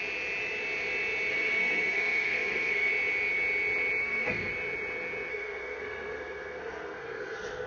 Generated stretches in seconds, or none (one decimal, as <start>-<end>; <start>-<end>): 1.3-2.9; 4.0-4.5; 5.3-7.7